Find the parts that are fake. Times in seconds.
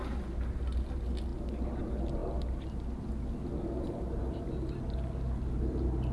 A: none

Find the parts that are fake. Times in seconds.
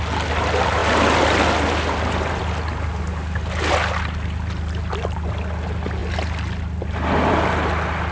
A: none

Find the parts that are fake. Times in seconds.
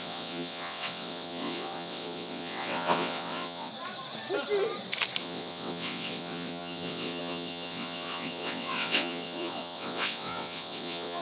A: 0.0-3.7 (vocoder, WaveNeXt); 5.2-11.2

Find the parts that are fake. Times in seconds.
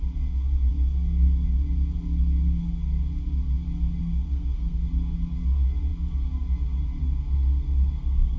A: 4.0-4.9 (codec, SNAC); 7.0-8.4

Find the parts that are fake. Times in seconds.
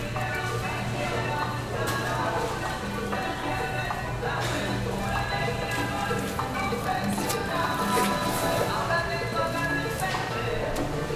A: none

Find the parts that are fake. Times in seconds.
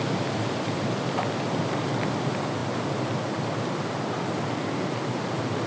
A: none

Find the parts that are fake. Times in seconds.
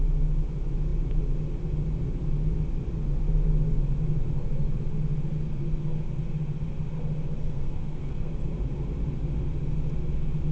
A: 7.4-8.3 (codec, SNAC)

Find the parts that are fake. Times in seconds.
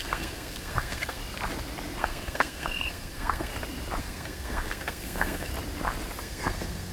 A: 0.0-1.2 (codec, SNAC); 2.0-3.5; 4.0-5.5; 6.2-6.9